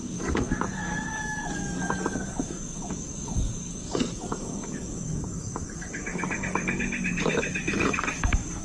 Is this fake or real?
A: fake